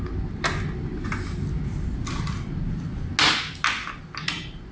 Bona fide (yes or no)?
yes